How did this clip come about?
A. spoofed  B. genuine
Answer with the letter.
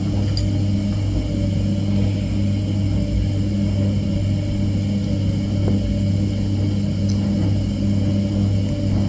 B